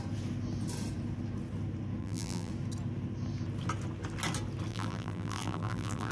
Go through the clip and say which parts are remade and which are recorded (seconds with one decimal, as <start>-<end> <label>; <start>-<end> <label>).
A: 0.0-2.0 recorded; 2.0-2.5 remade; 2.5-4.7 recorded; 4.7-6.1 remade